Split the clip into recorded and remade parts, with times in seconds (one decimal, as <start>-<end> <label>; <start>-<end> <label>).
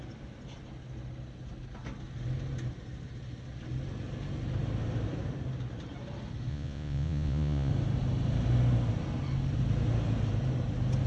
0.0-6.5 recorded; 6.5-7.7 remade; 7.7-11.1 recorded